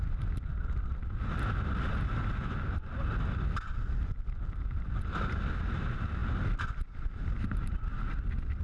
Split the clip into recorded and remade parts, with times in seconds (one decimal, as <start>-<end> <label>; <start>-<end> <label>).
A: 0.0-8.6 recorded